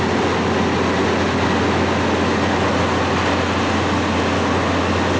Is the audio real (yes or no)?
yes